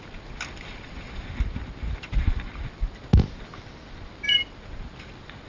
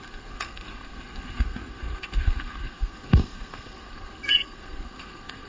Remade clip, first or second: second